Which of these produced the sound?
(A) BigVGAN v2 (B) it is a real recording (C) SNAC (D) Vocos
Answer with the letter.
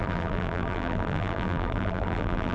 A